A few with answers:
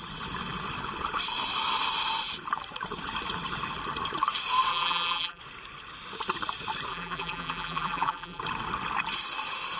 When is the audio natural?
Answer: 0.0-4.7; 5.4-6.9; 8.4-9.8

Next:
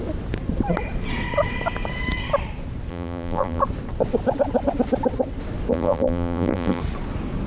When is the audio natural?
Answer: 0.0-2.9; 3.6-5.7; 6.8-7.5

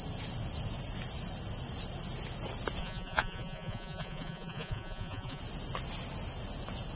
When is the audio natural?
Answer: 0.0-2.8; 5.4-7.0